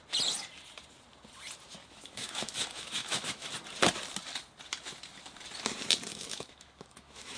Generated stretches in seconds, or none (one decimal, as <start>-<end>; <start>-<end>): 1.8-3.5; 6.1-7.4